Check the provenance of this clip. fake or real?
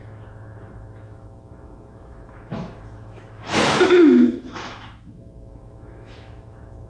fake